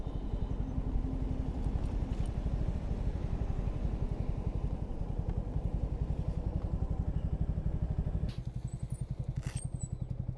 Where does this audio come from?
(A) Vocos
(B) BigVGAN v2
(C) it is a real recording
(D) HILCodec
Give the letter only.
C